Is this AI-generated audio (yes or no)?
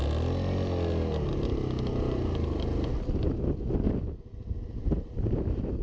no